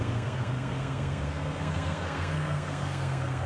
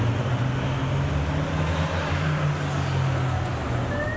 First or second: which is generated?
first